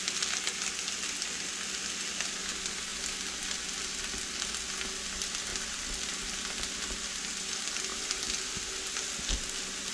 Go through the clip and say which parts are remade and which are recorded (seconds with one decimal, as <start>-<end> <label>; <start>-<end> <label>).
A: 0.0-9.9 recorded